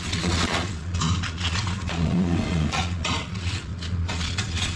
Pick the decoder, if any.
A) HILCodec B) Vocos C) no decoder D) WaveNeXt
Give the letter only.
B